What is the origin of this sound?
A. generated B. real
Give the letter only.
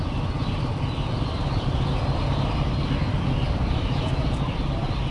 B